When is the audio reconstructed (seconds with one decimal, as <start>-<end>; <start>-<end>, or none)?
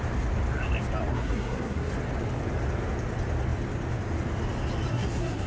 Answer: 1.1-1.9; 4.9-5.5